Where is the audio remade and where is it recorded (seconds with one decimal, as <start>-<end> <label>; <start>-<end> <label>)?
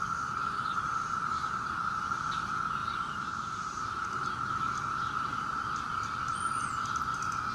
0.0-2.8 recorded; 2.8-4.6 remade; 4.6-7.5 recorded